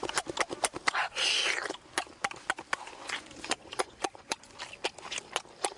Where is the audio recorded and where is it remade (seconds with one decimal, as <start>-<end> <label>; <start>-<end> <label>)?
0.0-3.0 recorded; 3.0-4.6 remade; 4.6-5.8 recorded